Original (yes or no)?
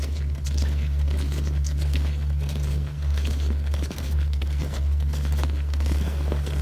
no